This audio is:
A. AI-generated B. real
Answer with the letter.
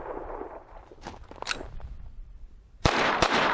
A